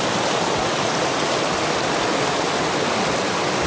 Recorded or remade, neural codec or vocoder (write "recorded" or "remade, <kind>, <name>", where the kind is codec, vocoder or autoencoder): recorded